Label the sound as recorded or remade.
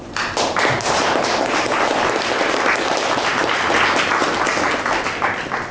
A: recorded